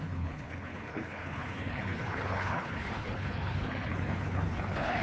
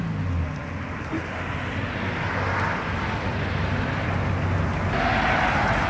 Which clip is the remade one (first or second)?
first